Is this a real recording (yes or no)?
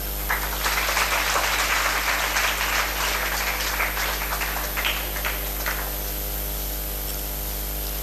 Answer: yes